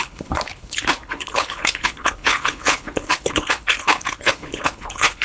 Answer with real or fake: fake